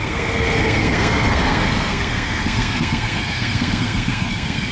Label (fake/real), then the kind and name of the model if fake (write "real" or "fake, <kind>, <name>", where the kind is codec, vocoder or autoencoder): fake, codec, SNAC